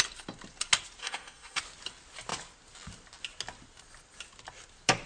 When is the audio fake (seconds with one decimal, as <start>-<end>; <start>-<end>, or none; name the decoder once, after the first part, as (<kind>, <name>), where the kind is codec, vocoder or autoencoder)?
1.0-1.6 (codec, SNAC)